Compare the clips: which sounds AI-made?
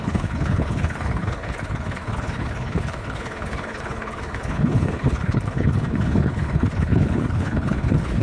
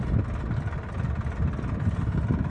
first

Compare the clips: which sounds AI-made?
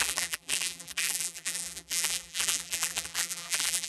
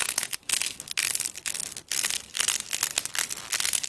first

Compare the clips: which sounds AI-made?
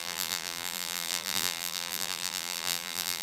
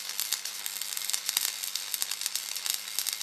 first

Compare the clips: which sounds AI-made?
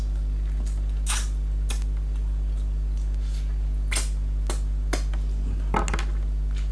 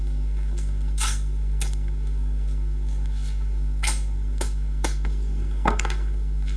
second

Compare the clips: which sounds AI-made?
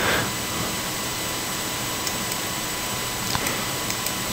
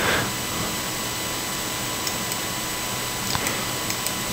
first